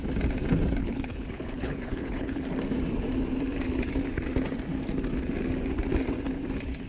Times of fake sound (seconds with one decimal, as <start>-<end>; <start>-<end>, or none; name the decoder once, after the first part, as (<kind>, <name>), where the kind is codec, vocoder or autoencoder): 0.8-2.4 (codec, HILCodec)